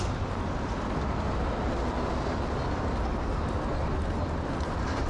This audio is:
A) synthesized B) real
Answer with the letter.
B